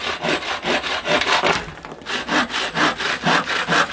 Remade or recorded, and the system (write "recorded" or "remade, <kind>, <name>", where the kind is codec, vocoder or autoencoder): recorded